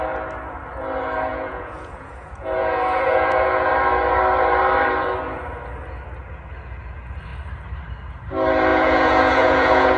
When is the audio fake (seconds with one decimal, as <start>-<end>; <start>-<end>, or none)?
1.3-3.7; 8.7-10.0